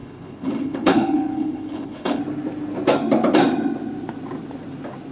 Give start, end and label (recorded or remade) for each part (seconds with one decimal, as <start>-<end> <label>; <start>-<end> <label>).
0.0-2.2 remade; 2.2-5.1 recorded

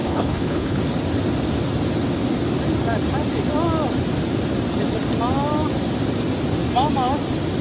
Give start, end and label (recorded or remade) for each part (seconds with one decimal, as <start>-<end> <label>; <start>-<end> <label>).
0.0-0.8 remade; 0.8-7.6 recorded

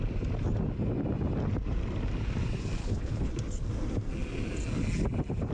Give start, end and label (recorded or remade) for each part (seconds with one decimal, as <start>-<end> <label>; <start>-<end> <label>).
0.0-2.8 recorded; 2.8-3.3 remade; 3.3-5.5 recorded

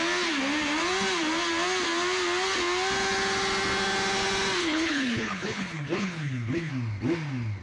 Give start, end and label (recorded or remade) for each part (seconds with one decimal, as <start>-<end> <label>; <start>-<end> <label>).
0.0-4.6 recorded; 4.6-6.7 remade; 6.7-7.6 recorded

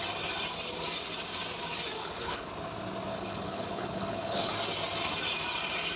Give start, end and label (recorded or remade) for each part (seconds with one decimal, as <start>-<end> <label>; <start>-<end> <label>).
0.0-2.0 recorded; 2.0-2.5 remade; 2.5-3.1 recorded; 3.1-4.5 remade; 4.5-6.0 recorded

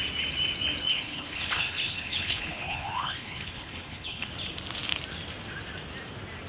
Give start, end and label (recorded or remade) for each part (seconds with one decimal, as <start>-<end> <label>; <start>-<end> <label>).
0.0-0.9 recorded; 0.9-4.3 remade; 4.3-6.5 recorded

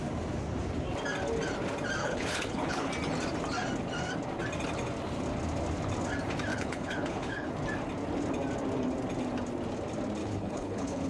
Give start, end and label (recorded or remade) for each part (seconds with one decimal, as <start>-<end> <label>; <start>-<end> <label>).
0.0-2.0 recorded; 2.0-2.9 remade; 2.9-6.5 recorded; 6.5-7.5 remade; 7.5-10.2 recorded; 10.2-11.1 remade

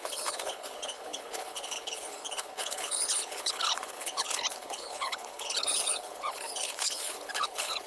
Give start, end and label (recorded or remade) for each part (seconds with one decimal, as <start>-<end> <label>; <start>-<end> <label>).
0.0-7.9 remade